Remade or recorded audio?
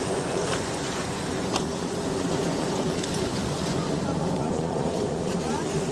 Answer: remade